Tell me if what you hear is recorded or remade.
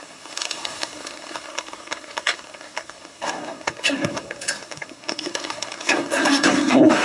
remade